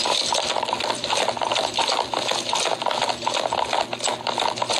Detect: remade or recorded recorded